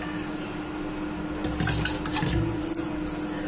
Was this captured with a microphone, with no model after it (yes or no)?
yes